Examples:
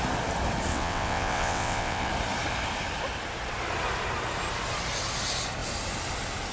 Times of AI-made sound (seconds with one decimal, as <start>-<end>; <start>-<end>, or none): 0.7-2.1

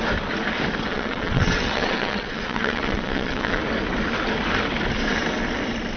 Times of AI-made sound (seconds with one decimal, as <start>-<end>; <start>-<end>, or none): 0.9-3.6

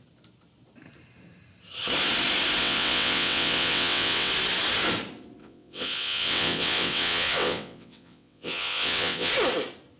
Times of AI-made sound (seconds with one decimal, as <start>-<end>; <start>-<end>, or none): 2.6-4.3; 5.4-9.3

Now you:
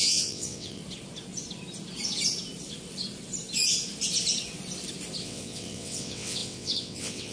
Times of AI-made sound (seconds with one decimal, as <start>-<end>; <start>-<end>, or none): 0.0-0.8; 5.2-7.3

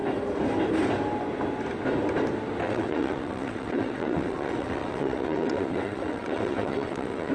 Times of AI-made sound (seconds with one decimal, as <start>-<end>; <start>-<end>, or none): 2.6-7.3